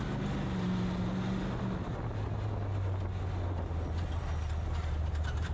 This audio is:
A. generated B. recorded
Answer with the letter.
B